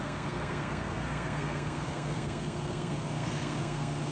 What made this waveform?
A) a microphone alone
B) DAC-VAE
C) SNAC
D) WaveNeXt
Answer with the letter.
C